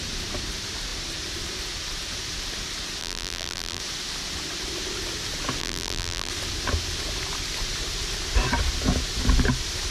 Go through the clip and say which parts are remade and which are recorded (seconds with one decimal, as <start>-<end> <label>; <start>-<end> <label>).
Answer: 0.0-3.0 recorded; 3.0-3.8 remade; 3.8-5.6 recorded; 5.6-6.3 remade; 6.3-9.9 recorded